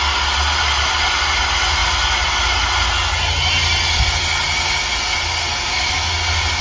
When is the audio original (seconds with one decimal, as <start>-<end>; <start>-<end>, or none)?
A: 0.0-6.6